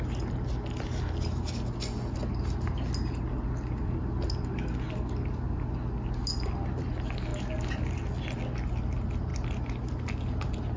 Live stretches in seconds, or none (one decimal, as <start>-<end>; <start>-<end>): 0.0-10.8